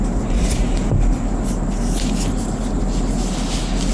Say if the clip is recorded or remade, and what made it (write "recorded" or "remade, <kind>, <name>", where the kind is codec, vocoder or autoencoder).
recorded